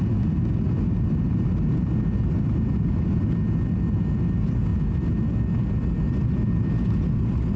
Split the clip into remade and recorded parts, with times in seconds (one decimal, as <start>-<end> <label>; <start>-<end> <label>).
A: 0.0-7.6 recorded